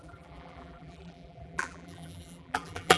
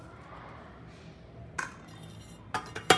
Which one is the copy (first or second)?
first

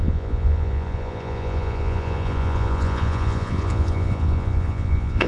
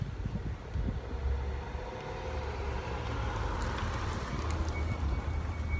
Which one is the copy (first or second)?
first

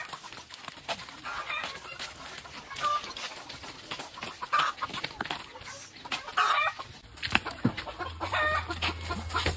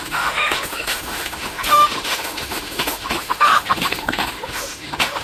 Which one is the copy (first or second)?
second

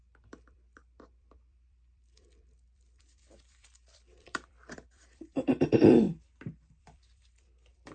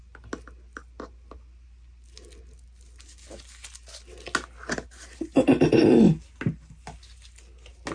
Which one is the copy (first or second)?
first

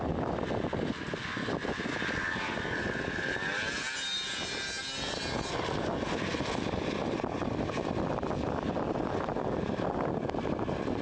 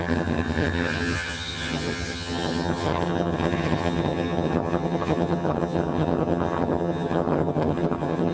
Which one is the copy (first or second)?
second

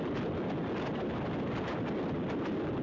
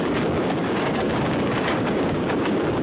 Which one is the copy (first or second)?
second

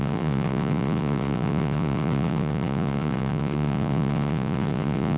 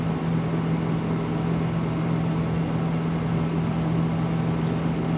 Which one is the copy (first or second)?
first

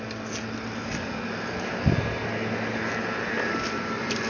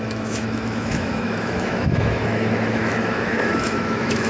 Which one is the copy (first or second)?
second